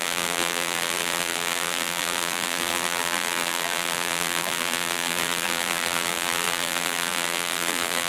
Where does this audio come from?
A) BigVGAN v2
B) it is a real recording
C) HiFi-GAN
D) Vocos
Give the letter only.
A